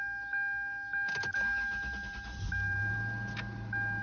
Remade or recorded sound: recorded